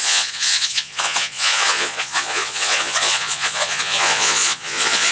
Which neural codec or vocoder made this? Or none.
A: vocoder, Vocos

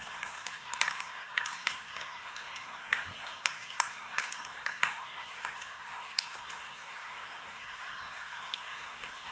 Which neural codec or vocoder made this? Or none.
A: codec, SNAC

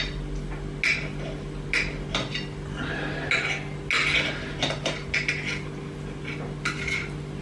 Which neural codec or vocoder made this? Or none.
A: none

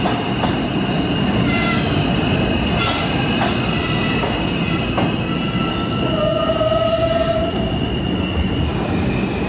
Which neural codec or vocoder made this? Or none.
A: none